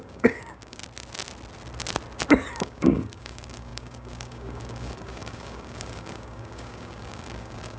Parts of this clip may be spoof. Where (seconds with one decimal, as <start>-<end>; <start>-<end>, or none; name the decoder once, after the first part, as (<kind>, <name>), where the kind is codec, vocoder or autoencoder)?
0.0-0.8 (codec, DAC); 2.5-7.8